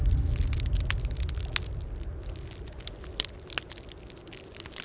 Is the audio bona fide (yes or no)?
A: yes